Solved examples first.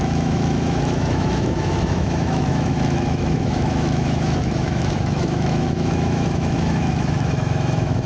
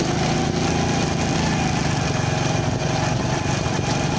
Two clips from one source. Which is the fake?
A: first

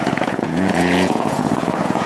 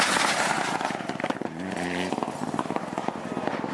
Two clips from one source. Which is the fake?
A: first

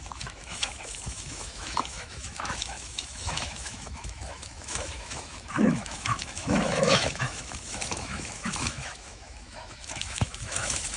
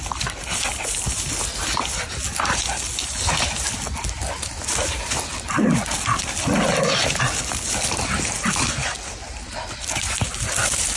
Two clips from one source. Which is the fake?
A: first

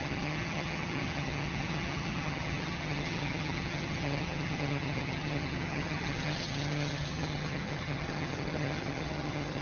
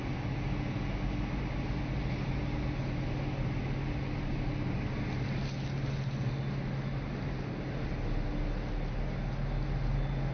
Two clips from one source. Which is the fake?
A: first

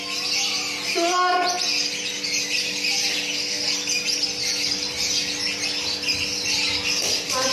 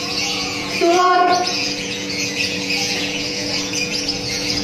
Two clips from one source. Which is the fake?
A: second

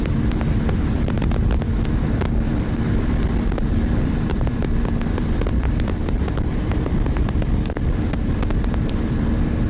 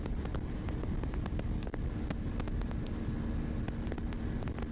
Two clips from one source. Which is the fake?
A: first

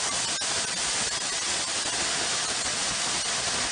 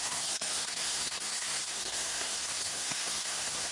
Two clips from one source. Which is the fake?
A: second